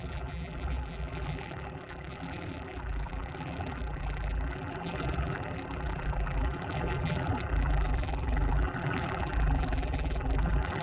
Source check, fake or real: fake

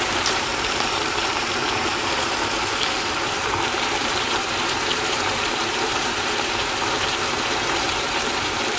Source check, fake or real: fake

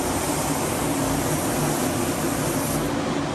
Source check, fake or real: real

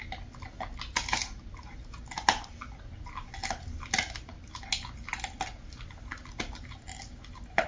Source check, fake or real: real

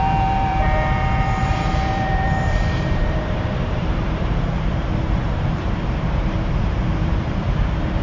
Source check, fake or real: fake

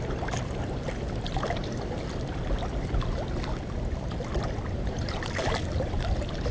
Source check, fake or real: fake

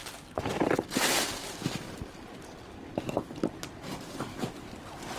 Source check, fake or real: real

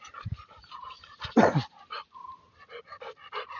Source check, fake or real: fake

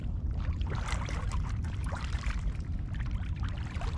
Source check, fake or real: fake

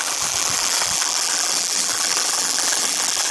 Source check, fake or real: fake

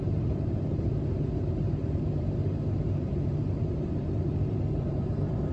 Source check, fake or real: fake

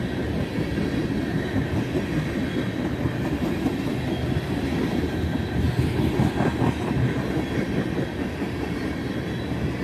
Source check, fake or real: real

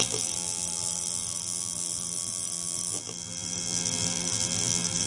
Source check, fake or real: fake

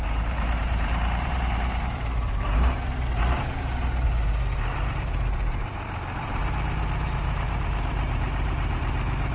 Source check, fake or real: fake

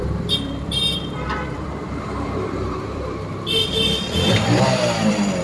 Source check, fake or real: fake